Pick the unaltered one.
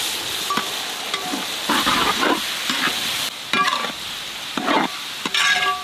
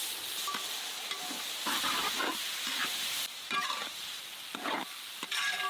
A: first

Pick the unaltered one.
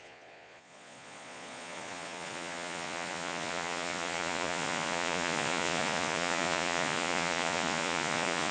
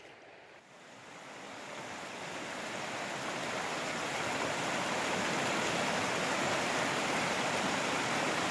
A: second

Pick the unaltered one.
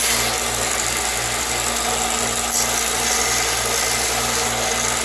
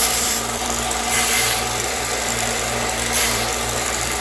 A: first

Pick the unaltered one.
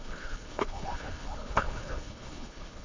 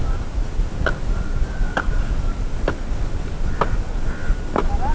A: second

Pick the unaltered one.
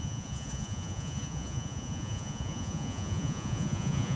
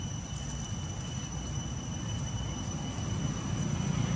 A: second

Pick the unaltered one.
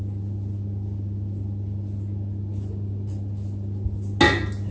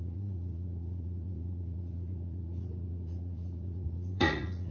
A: first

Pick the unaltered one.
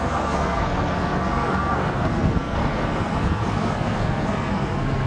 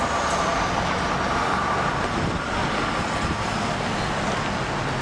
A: second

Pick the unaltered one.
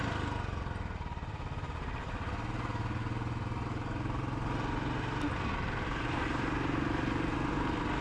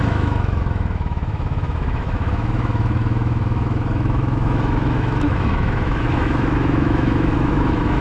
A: first